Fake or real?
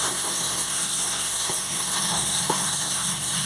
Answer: fake